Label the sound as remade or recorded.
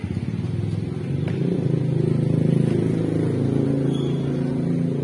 recorded